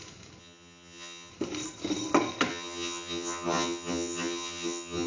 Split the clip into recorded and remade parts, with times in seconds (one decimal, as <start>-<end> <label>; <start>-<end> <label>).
0.0-0.4 recorded; 0.4-1.3 remade; 1.3-2.5 recorded; 2.5-5.1 remade